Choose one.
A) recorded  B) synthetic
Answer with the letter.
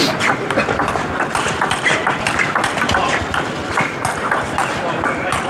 A